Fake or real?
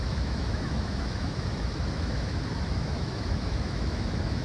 fake